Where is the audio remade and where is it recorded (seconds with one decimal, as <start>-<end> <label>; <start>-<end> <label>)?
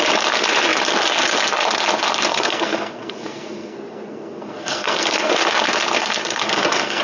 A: 0.0-2.3 recorded; 2.3-5.3 remade; 5.3-6.2 recorded; 6.2-7.0 remade